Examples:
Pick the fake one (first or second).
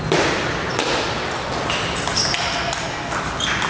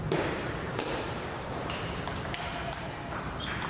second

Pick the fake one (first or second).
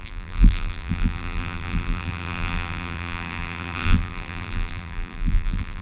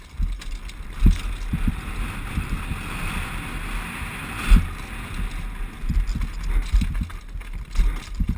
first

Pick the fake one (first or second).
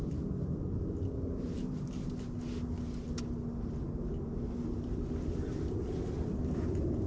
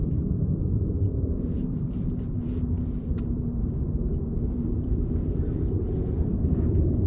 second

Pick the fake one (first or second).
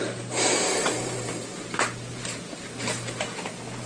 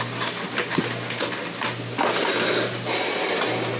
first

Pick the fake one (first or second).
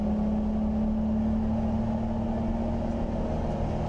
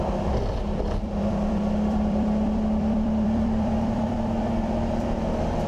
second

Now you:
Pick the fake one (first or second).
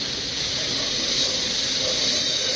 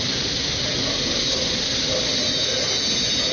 first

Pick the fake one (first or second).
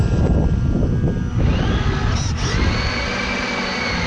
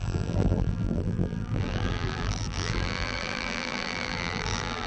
second